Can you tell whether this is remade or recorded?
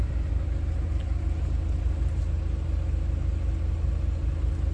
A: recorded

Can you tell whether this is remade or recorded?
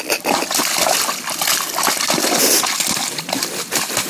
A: recorded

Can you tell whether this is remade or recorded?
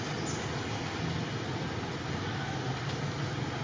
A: recorded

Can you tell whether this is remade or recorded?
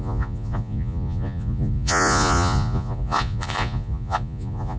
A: remade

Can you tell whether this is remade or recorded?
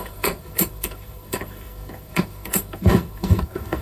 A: remade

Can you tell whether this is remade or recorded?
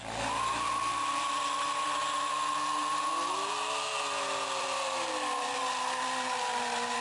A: remade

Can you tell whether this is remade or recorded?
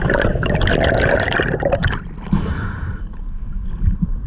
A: recorded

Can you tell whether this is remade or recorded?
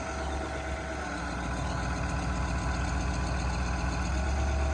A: recorded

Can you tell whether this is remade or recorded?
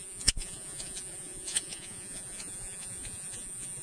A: remade